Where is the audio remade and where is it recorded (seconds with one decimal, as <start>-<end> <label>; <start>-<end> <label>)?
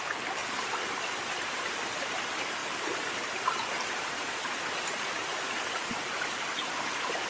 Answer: 0.0-5.3 recorded; 5.3-6.2 remade; 6.2-7.3 recorded